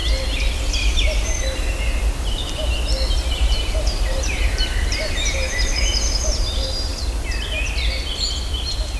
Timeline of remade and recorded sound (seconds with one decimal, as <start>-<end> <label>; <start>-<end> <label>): 0.0-3.1 recorded; 3.1-6.9 remade; 6.9-8.5 recorded; 8.5-9.0 remade

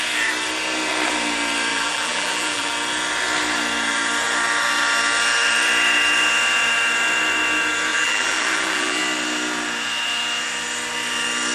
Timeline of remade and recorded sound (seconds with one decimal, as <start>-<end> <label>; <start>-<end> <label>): 0.0-1.7 recorded; 1.7-2.7 remade; 2.7-7.9 recorded; 7.9-9.0 remade; 9.0-11.5 recorded

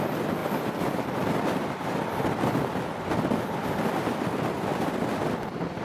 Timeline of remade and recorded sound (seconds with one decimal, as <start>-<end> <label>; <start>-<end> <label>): 0.0-5.8 remade

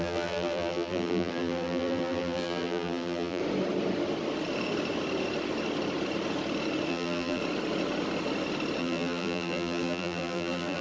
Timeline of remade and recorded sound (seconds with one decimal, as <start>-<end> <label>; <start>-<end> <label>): 0.0-3.4 remade; 3.4-6.9 recorded; 6.9-7.4 remade; 7.4-8.8 recorded; 8.8-10.8 remade

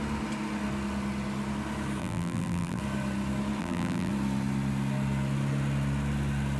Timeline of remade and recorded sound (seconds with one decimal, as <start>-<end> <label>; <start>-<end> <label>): 0.0-2.0 recorded; 2.0-2.8 remade; 2.8-3.6 recorded; 3.6-4.1 remade; 4.1-6.6 recorded

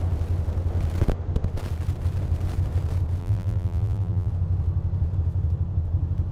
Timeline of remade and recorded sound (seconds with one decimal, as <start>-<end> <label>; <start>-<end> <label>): 0.0-3.2 recorded; 3.2-4.3 remade; 4.3-6.3 recorded

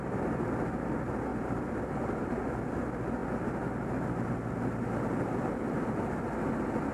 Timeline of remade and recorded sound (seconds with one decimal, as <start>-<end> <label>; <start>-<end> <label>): 0.0-1.3 recorded; 1.3-2.4 remade; 2.4-6.9 recorded

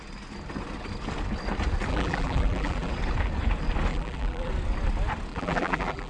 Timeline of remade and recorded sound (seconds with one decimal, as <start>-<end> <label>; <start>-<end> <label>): 0.0-1.9 recorded; 1.9-2.9 remade; 2.9-3.9 recorded; 3.9-4.5 remade; 4.5-5.3 recorded; 5.3-6.1 remade